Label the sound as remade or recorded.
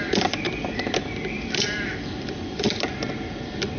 remade